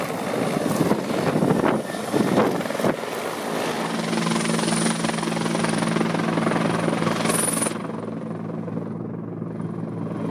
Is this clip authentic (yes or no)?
yes